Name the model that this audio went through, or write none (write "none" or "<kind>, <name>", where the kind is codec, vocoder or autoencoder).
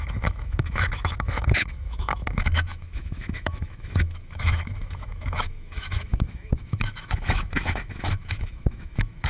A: autoencoder, DAC-VAE